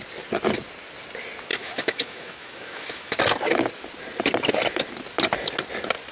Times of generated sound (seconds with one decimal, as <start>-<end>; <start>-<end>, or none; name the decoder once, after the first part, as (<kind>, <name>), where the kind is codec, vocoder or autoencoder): 1.5-3.2 (autoencoder, DAC-VAE)